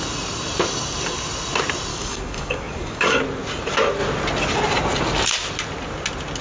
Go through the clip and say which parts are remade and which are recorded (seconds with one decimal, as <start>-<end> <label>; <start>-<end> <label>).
0.0-1.9 recorded; 1.9-3.2 remade; 3.2-6.4 recorded